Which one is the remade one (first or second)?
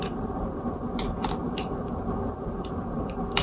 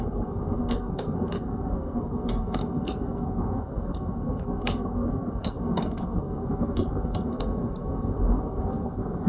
second